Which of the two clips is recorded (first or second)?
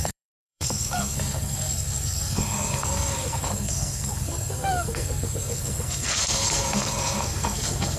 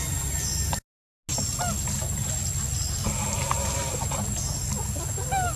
second